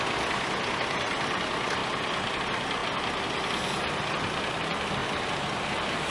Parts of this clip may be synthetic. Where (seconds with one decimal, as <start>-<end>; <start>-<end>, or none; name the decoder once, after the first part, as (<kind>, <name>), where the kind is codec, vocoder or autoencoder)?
none